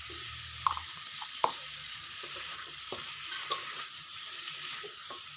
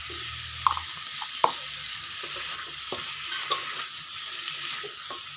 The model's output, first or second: first